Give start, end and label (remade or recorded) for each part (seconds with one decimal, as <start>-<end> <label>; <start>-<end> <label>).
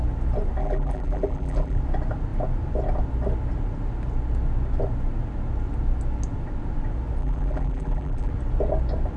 0.0-0.6 recorded; 0.6-1.8 remade; 1.8-7.2 recorded; 7.2-8.3 remade; 8.3-9.2 recorded